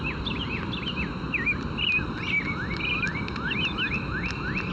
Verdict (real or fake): real